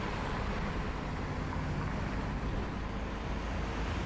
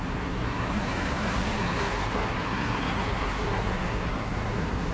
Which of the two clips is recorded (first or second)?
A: first